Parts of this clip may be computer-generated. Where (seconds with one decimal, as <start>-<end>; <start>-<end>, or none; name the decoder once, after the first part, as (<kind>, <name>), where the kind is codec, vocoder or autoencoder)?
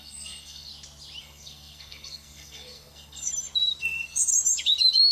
0.0-0.7 (codec, SNAC); 1.2-3.3; 3.8-4.3